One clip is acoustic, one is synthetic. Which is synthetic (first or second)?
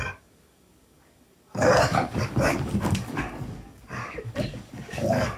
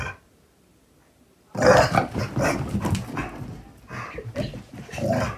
first